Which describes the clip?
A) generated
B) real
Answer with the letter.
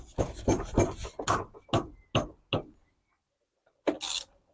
B